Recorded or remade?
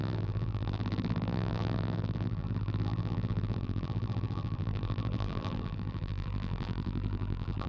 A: remade